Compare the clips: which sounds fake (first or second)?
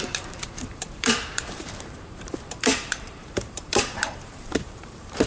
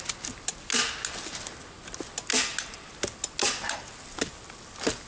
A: first